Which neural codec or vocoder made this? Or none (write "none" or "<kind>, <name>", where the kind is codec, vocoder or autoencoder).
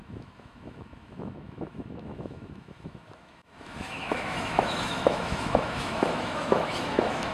autoencoder, DAC-VAE